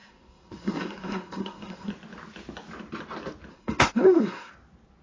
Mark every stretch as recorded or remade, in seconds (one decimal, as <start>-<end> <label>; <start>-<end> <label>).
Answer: 0.0-1.9 remade; 1.9-3.5 recorded; 3.5-4.5 remade; 4.5-5.0 recorded